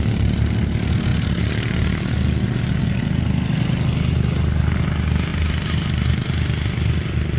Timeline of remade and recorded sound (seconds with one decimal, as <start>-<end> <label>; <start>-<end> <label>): 0.0-5.3 recorded; 5.3-7.4 remade